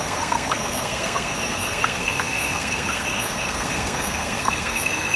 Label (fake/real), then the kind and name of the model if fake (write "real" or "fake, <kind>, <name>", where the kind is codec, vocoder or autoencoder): fake, codec, SNAC